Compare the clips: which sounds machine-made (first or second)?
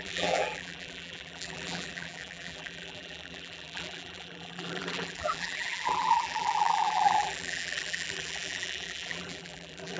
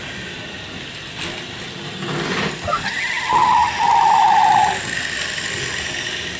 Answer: first